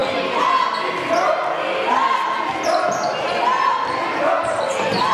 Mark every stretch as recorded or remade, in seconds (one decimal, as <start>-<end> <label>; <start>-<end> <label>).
0.0-5.1 recorded